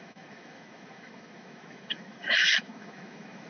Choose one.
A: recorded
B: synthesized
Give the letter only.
B